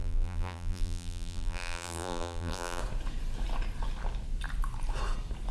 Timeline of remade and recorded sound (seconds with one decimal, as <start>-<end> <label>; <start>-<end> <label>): 0.0-2.8 remade; 2.8-5.5 recorded